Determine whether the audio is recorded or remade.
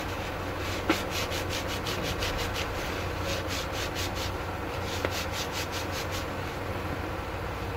recorded